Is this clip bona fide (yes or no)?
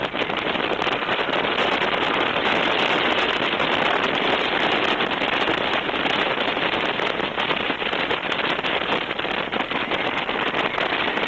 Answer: yes